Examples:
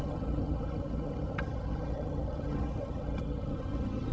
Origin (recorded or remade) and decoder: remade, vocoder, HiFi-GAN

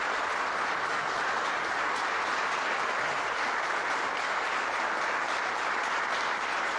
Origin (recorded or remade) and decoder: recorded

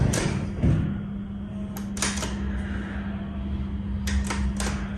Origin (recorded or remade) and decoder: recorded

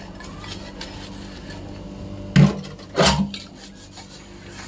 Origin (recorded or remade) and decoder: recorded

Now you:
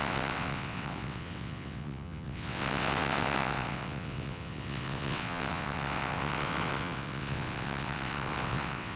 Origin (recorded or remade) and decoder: remade, vocoder, WaveNeXt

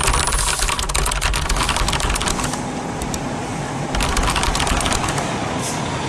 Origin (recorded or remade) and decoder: recorded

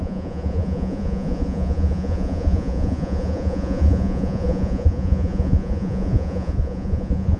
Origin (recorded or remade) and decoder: remade, vocoder, Vocos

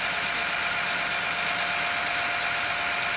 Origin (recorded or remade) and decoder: recorded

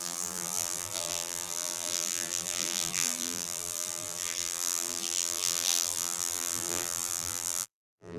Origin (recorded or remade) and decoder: remade, vocoder, BigVGAN v2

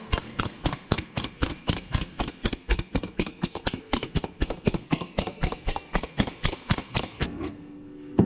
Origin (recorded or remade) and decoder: remade, codec, SNAC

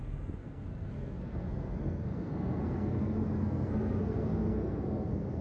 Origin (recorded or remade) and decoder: remade, codec, SNAC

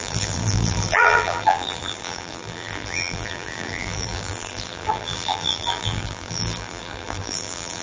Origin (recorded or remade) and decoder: remade, vocoder, BigVGAN v2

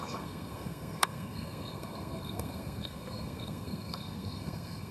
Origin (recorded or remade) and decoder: remade, codec, SNAC